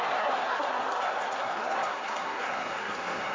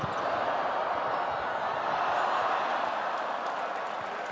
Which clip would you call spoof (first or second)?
first